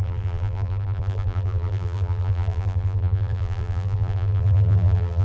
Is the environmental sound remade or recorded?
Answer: remade